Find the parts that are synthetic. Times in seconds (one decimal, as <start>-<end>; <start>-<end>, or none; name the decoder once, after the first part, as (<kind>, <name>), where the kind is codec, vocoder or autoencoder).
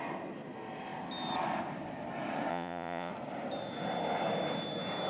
2.5-3.1 (vocoder, Vocos)